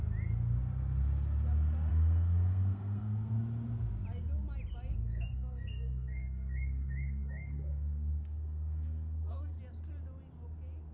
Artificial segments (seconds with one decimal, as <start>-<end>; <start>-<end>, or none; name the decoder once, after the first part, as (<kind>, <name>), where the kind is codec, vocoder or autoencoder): 1.9-3.3 (codec, SNAC); 4.9-9.6